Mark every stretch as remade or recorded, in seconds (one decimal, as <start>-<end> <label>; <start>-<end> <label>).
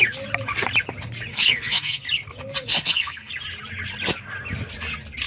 0.0-1.3 recorded; 1.3-2.0 remade; 2.0-2.7 recorded; 2.7-3.3 remade; 3.3-5.3 recorded